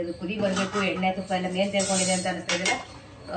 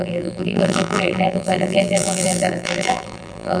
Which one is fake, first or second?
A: second